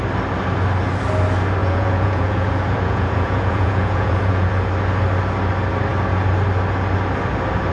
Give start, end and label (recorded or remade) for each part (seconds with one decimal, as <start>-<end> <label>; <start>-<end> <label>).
0.0-1.6 recorded; 1.6-4.5 remade; 4.5-7.7 recorded

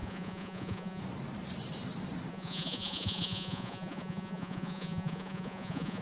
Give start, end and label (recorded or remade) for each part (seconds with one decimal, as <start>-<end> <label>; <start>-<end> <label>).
0.0-1.0 remade; 1.0-2.3 recorded; 2.3-6.0 remade